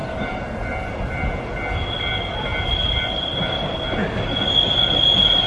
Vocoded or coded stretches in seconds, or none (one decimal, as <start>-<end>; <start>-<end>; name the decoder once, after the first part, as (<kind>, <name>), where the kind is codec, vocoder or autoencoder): none